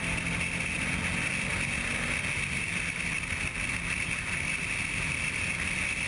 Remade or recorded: recorded